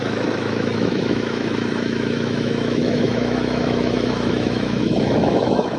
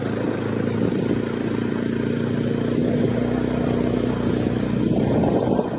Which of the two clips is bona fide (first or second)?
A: second